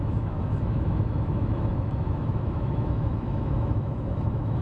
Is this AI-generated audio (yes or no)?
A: yes